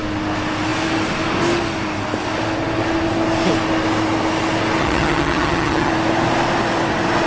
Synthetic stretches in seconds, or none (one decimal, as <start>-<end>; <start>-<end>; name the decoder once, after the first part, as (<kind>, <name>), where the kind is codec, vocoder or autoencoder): 4.8-5.9 (vocoder, HiFi-GAN)